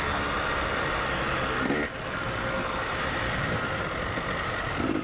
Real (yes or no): yes